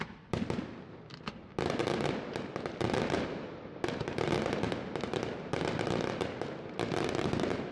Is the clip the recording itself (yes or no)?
yes